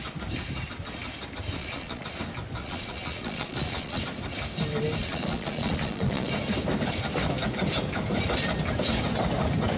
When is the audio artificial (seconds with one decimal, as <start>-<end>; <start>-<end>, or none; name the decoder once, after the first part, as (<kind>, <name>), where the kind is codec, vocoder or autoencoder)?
1.6-2.1 (vocoder, Vocos); 2.6-4.0; 5.0-6.3